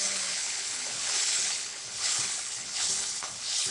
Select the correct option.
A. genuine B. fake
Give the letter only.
B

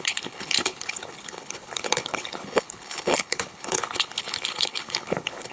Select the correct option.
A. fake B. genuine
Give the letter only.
A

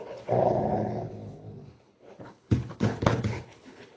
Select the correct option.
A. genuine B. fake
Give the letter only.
B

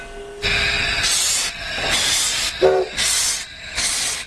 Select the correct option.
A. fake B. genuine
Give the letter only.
B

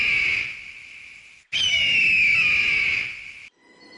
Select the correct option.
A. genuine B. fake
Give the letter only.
A